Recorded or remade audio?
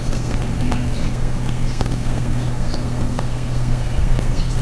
remade